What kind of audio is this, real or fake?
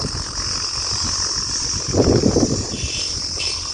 real